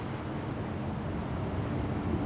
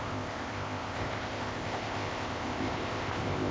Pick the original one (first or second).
first